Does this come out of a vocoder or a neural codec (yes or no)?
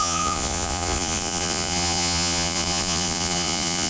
yes